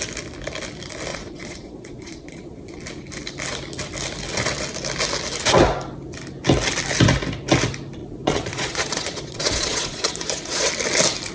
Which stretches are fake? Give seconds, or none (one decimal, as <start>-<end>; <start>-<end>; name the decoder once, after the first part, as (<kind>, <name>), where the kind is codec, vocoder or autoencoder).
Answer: 1.1-2.8 (vocoder, Vocos); 8.0-10.7